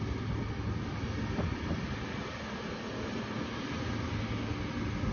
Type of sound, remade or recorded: recorded